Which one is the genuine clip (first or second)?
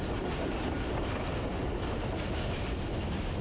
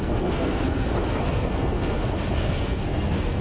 first